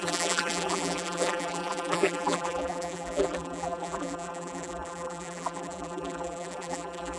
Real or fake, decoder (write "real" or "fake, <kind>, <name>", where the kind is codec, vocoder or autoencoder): fake, vocoder, BigVGAN v2